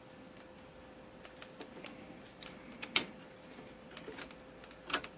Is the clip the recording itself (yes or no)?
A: yes